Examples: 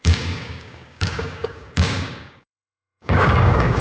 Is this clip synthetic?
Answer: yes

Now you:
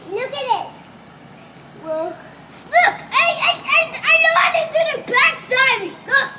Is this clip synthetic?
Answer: no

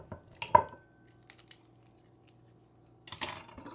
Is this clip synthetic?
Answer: no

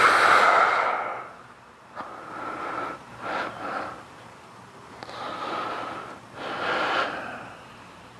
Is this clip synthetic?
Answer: no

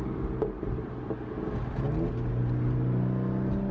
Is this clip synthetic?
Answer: no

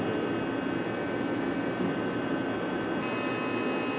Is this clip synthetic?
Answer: no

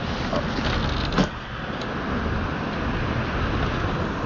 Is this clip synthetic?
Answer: no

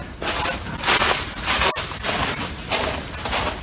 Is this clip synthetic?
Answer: no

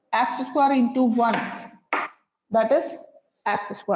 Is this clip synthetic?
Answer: no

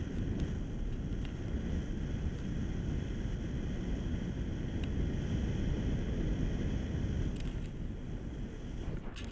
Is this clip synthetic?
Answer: no